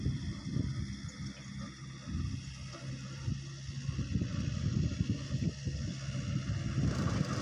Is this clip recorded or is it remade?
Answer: recorded